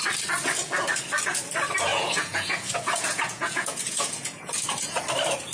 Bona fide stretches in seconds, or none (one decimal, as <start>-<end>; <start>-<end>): 0.0-1.9; 5.0-5.5